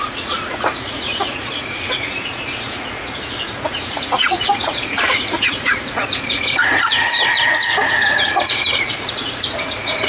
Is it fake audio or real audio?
fake